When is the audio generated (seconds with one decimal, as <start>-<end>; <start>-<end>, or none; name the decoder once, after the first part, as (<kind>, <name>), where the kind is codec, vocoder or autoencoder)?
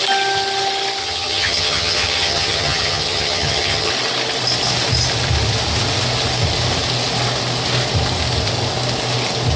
1.0-3.9 (vocoder, HiFi-GAN)